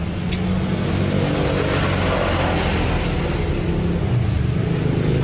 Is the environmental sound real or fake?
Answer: real